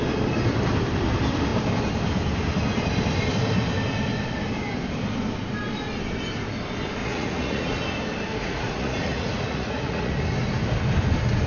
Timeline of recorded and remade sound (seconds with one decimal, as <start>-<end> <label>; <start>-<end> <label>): 0.0-7.0 recorded; 7.0-7.8 remade; 7.8-8.4 recorded; 8.4-10.1 remade; 10.1-11.5 recorded